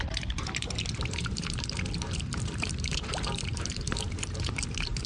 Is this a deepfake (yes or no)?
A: yes